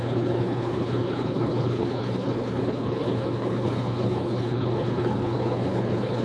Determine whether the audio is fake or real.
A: fake